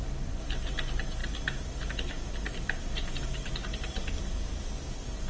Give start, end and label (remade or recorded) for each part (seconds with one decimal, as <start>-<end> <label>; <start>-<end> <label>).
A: 0.0-5.3 recorded

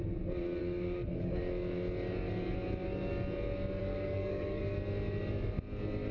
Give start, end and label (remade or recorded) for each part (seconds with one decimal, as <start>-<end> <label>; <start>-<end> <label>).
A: 0.0-0.6 recorded; 0.6-1.4 remade; 1.4-3.8 recorded; 3.8-4.6 remade; 4.6-6.1 recorded

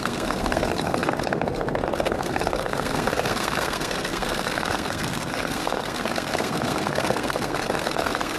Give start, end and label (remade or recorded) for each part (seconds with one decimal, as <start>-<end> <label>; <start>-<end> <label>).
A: 0.0-8.4 remade

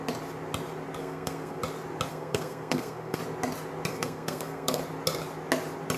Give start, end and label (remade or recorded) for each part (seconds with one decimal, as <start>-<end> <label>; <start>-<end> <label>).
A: 0.0-1.0 recorded; 1.0-1.6 remade; 1.6-2.1 recorded; 2.1-3.2 remade; 3.2-3.9 recorded; 3.9-4.8 remade; 4.8-6.0 recorded